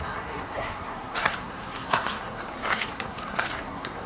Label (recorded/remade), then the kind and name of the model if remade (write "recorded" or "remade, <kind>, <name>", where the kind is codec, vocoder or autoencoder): remade, codec, SNAC